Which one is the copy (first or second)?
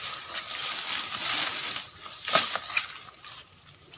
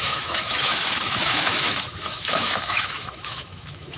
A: second